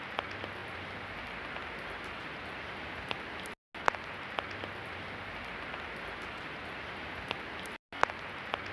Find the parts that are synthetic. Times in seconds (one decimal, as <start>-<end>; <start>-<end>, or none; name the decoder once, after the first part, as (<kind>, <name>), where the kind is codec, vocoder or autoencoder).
none